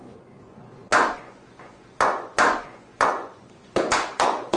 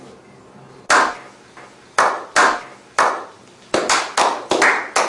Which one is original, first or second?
second